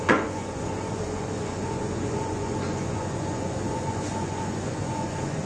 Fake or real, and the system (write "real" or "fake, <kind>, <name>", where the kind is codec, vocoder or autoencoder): fake, vocoder, Vocos